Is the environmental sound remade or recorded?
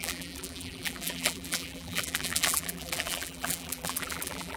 remade